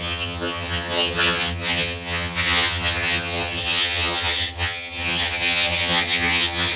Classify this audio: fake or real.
fake